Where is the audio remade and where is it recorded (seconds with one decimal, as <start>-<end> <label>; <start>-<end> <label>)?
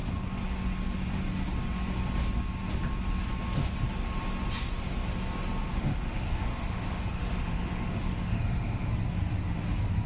0.0-5.7 recorded; 5.7-8.9 remade; 8.9-10.1 recorded